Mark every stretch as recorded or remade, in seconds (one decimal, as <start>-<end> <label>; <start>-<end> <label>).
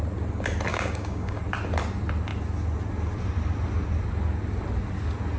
0.0-0.7 recorded; 0.7-1.4 remade; 1.4-5.4 recorded